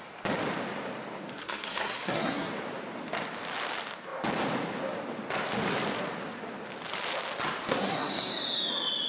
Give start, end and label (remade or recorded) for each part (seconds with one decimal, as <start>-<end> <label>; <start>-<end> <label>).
0.0-1.4 recorded; 1.4-2.5 remade; 2.5-7.7 recorded; 7.7-8.3 remade; 8.3-9.1 recorded